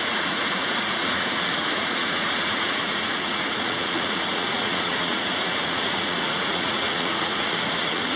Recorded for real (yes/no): no